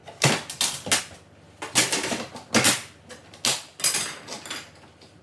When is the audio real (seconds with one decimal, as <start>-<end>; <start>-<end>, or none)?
0.0-5.2